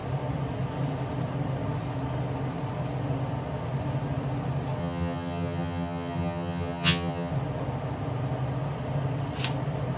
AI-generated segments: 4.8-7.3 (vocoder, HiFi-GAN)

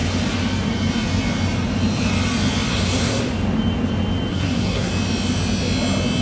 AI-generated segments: 2.7-3.3 (codec, SNAC); 4.3-4.9

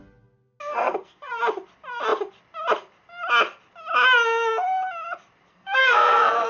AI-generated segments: 0.7-1.3 (codec, SNAC); 5.5-6.5

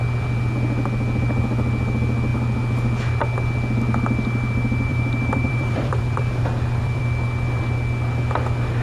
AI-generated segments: 4.9-7.0 (vocoder, BigVGAN v2)

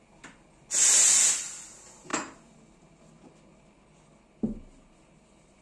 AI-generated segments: none

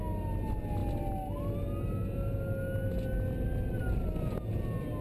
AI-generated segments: none

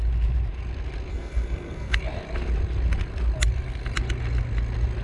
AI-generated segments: 1.1-2.0 (codec, SNAC)

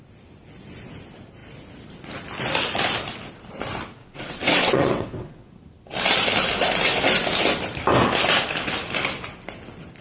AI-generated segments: 4.0-5.5 (vocoder, WaveNeXt)